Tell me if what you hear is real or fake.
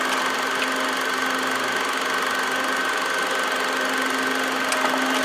real